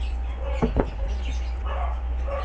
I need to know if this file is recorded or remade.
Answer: remade